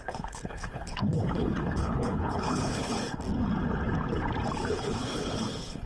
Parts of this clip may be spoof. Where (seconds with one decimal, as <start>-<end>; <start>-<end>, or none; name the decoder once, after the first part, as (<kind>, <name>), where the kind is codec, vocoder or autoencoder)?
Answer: 0.0-3.0 (codec, HILCodec); 4.7-5.9